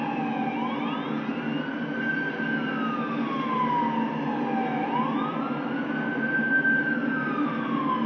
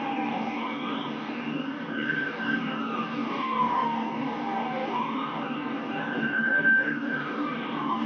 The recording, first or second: first